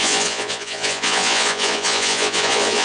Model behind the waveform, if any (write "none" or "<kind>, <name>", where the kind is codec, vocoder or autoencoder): vocoder, Vocos